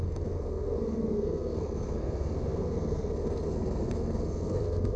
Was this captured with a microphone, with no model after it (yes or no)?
no